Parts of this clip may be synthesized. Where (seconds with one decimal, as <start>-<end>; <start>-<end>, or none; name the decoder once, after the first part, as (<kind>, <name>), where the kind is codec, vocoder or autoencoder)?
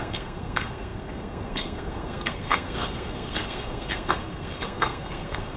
0.0-5.6 (codec, SNAC)